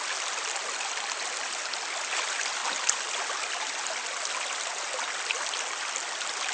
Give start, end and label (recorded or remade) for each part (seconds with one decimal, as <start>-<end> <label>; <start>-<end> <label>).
0.0-6.5 recorded

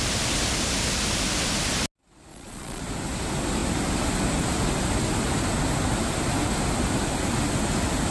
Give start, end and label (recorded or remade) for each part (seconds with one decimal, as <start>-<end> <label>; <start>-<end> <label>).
0.0-2.3 recorded; 2.3-2.8 remade; 2.8-8.1 recorded